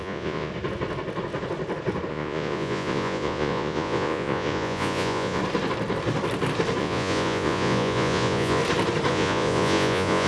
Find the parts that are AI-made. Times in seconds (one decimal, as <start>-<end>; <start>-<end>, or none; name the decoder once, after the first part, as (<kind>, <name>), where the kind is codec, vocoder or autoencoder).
0.0-0.5 (vocoder, Vocos); 2.1-5.4; 6.8-8.6; 9.1-10.3